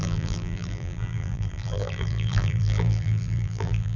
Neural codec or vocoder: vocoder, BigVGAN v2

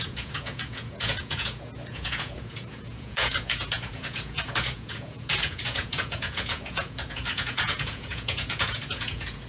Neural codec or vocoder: vocoder, Vocos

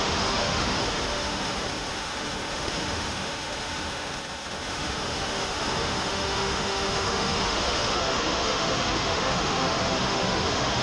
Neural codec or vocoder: autoencoder, DAC-VAE